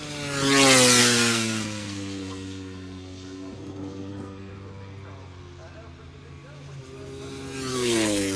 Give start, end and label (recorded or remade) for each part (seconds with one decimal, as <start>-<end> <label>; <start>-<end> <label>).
0.0-1.0 recorded; 1.0-4.5 remade; 4.5-7.7 recorded; 7.7-8.4 remade